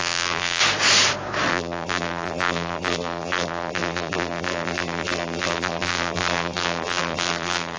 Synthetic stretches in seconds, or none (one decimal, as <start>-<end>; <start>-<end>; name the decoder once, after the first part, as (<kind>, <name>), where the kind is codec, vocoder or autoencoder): 0.0-0.6 (vocoder, BigVGAN v2); 1.5-7.8